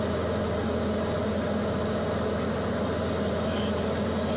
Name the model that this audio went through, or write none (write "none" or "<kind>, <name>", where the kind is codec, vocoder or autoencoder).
none